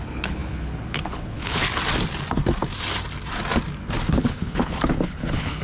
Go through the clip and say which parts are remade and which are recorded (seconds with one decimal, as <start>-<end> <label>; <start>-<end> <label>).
0.0-1.7 remade; 1.7-4.1 recorded; 4.1-5.6 remade